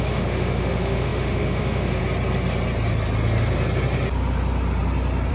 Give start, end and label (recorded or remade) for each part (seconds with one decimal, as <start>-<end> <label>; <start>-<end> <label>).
0.0-2.0 remade; 2.0-5.3 recorded